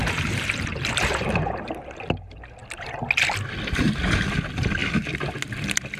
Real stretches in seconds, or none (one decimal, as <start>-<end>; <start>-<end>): 2.0-6.0